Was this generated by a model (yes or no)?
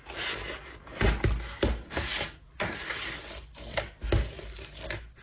no